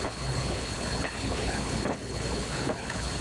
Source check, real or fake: fake